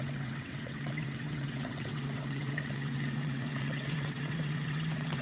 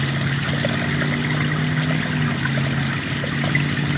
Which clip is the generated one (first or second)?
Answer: first